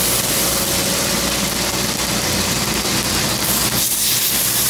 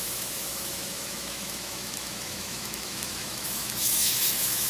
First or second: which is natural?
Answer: first